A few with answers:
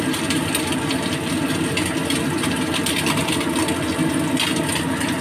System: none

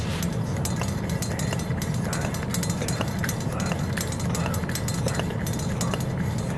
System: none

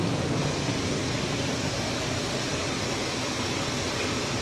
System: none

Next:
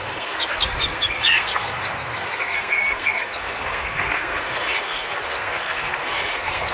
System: codec, SNAC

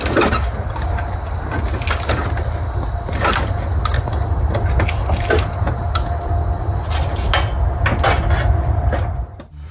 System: none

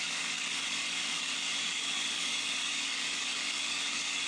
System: codec, DAC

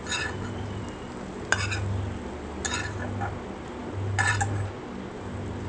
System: none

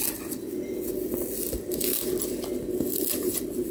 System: none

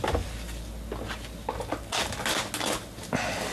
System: none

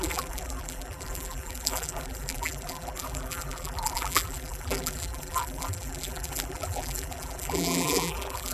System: vocoder, BigVGAN v2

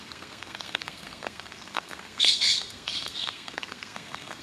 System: codec, SNAC